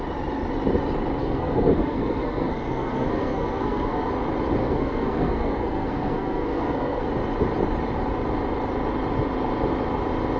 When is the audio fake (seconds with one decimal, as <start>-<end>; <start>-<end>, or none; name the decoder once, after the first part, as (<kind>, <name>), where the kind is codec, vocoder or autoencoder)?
1.2-4.1 (codec, SNAC); 4.6-7.1